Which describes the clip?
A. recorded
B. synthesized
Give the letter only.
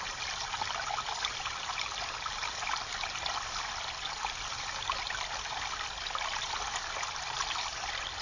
A